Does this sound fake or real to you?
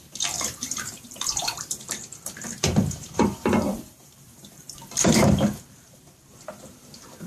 fake